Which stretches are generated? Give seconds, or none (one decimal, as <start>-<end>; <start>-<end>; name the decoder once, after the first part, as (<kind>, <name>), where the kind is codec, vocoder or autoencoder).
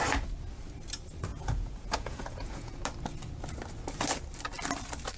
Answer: 1.3-2.8 (vocoder, Vocos)